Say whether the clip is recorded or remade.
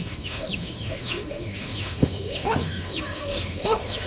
remade